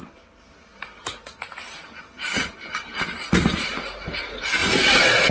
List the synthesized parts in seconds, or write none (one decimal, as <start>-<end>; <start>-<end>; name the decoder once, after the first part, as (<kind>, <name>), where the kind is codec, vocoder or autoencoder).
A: 4.6-5.3 (vocoder, BigVGAN v2)